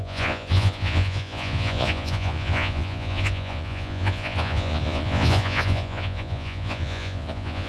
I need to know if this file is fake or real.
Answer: fake